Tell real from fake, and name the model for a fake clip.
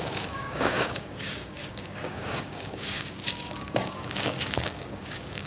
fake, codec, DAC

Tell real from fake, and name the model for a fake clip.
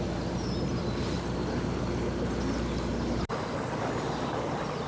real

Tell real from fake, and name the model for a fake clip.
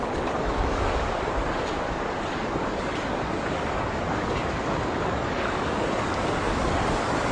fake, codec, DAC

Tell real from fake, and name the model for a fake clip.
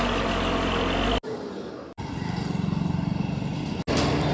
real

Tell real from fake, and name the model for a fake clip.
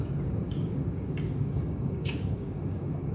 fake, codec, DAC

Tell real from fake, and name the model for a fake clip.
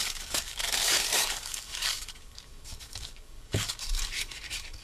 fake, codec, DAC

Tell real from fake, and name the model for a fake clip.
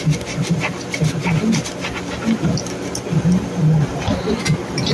real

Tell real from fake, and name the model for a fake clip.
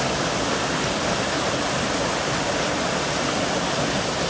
real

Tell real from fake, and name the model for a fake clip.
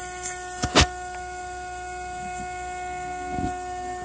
real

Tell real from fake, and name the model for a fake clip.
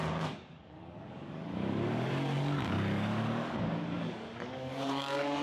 fake, codec, DAC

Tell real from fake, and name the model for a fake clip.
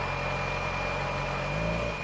real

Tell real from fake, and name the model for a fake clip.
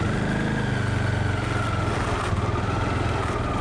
real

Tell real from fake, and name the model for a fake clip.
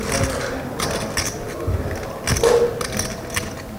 real